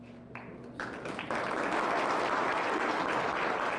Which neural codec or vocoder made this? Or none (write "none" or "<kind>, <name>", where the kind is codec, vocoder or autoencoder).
none